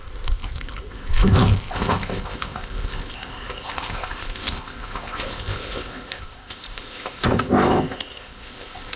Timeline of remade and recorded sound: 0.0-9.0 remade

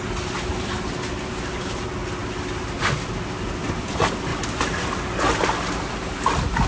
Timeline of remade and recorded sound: 0.0-6.7 recorded